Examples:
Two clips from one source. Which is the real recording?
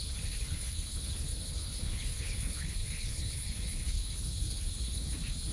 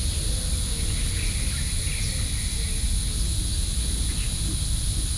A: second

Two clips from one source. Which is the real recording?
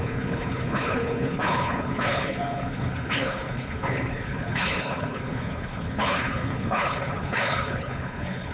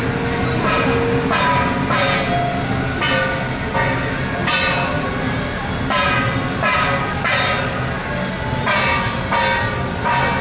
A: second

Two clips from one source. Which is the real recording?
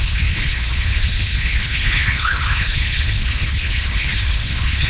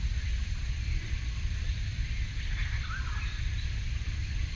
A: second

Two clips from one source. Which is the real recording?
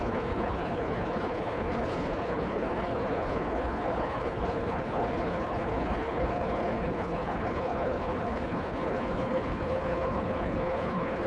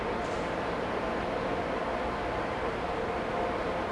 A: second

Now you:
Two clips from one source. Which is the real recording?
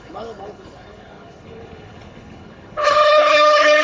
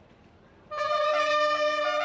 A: second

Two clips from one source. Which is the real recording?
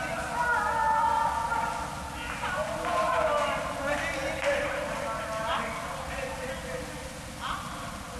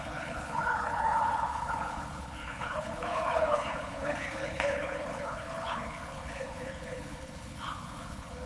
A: first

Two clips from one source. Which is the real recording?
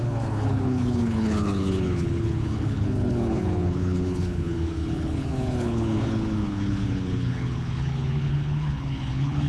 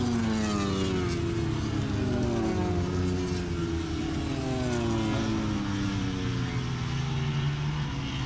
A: second